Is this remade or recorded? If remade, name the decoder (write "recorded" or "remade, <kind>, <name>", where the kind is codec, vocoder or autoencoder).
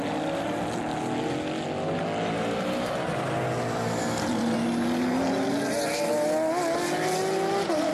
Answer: recorded